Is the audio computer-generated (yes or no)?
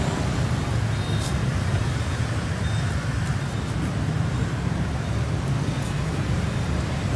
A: no